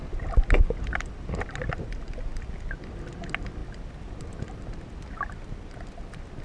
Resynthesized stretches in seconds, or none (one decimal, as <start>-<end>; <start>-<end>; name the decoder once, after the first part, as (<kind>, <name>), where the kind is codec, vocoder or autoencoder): none